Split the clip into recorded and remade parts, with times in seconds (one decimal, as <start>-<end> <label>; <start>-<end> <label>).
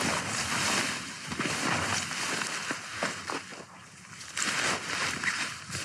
0.0-5.8 recorded